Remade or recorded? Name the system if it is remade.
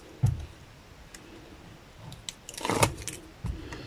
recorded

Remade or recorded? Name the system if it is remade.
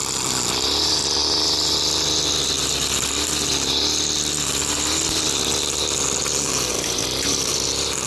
recorded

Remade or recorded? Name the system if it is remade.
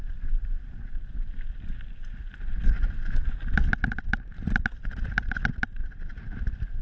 recorded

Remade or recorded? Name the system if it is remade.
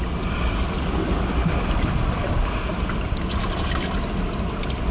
recorded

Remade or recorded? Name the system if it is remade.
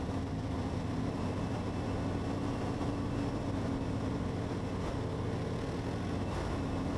recorded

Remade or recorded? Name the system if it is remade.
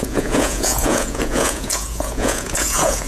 remade, vocoder, Vocos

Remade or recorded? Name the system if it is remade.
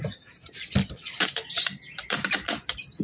recorded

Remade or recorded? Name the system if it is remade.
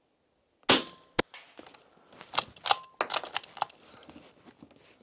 recorded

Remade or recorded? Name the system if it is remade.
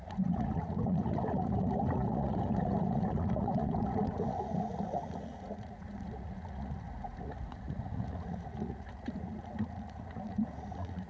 remade, vocoder, Vocos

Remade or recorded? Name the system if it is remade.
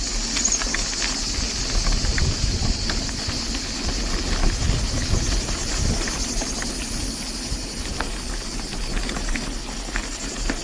recorded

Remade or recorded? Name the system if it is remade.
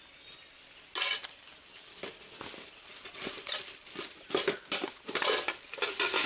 recorded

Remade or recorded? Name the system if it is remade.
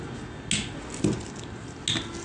recorded